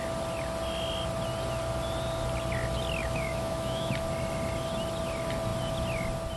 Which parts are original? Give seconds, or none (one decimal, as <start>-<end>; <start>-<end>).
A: 0.0-3.0; 3.9-6.4